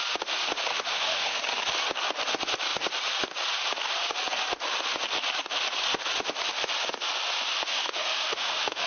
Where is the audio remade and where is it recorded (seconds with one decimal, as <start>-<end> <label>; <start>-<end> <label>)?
0.0-0.7 recorded; 0.7-1.4 remade; 1.4-7.7 recorded; 7.7-8.9 remade